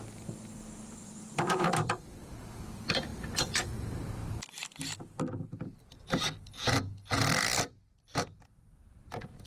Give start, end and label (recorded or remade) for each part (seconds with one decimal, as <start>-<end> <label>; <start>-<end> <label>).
0.0-4.2 remade; 4.2-7.1 recorded; 7.1-9.5 remade